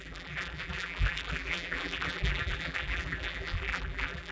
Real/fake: fake